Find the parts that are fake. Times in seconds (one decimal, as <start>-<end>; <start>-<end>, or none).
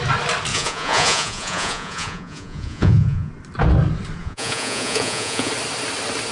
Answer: 0.5-3.3; 4.2-5.5